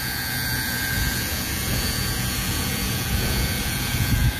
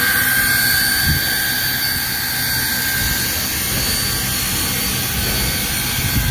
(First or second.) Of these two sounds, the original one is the second